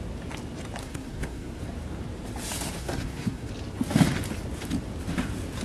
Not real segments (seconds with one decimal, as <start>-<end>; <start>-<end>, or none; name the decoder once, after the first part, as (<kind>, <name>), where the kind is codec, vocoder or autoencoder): 0.8-1.6 (codec, SNAC); 2.8-3.5